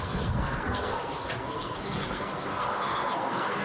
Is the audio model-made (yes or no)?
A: yes